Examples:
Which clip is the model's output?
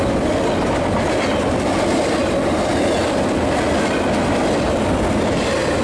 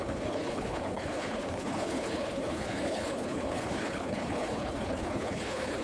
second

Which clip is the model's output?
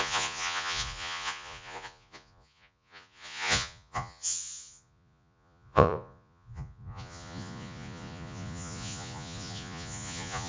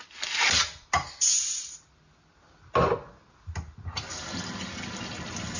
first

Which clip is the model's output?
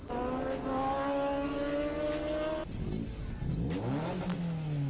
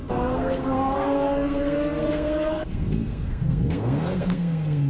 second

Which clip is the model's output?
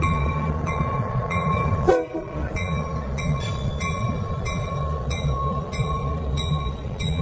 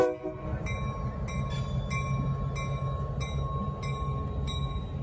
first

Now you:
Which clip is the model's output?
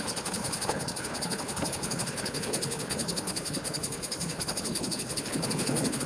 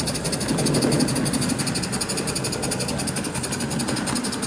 first